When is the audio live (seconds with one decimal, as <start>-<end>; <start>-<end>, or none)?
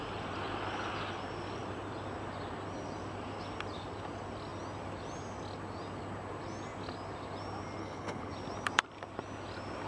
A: 0.0-7.8; 8.3-9.9